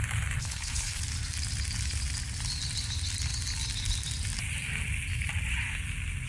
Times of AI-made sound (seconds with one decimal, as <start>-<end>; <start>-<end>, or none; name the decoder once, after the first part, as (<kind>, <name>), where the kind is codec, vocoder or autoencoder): 0.4-1.0 (codec, HILCodec)